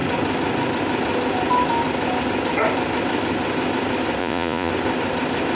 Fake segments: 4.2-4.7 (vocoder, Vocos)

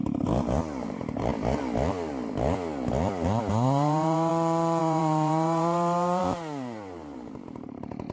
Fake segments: 0.0-1.3 (vocoder, BigVGAN v2); 3.5-4.3; 4.8-8.1

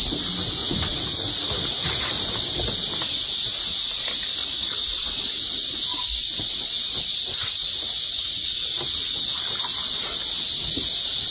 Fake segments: 0.6-2.2 (vocoder, Vocos); 4.4-5.2; 5.9-6.6; 7.4-8.6

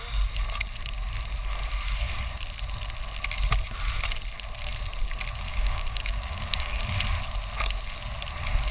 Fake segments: 5.5-6.9 (codec, DAC)